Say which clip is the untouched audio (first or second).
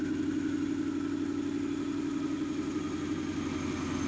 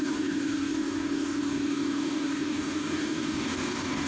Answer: first